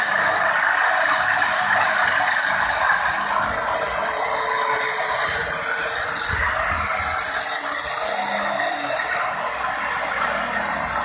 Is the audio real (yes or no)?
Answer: yes